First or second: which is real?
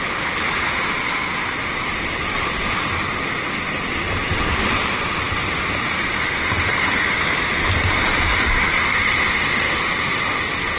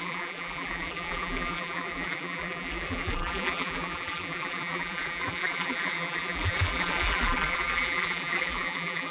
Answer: first